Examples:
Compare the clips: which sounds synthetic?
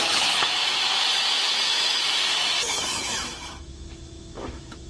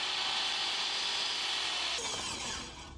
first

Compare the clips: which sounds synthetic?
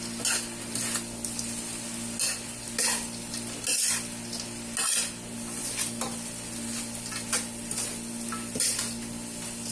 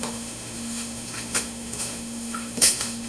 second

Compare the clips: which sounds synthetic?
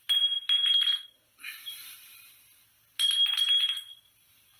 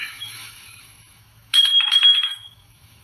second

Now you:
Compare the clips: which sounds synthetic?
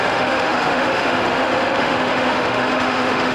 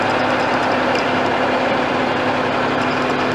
first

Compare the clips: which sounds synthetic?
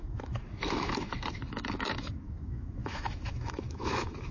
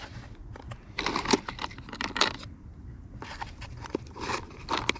first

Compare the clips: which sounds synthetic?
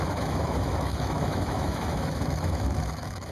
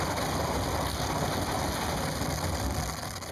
first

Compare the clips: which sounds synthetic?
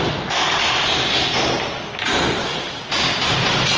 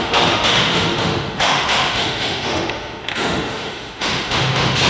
second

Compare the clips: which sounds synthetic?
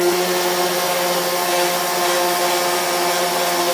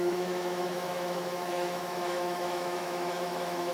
second